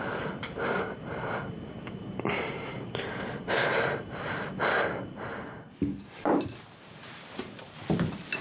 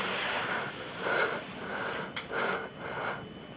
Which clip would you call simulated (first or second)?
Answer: first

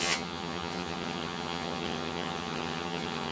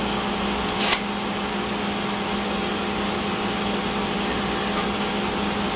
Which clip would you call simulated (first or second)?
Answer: first